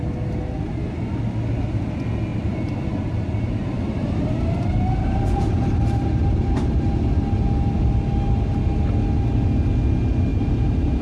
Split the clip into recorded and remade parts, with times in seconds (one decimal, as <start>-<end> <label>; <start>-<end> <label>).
0.0-2.3 recorded; 2.3-6.8 remade; 6.8-10.3 recorded; 10.3-11.0 remade